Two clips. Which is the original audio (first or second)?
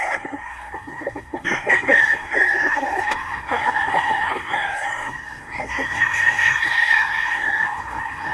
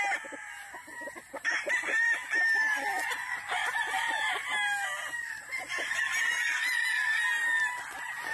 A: second